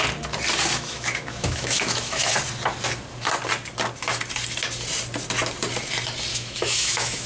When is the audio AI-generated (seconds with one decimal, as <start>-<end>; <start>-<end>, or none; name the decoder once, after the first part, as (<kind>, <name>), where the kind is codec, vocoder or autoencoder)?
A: 0.7-2.3 (autoencoder, DAC-VAE); 6.3-7.3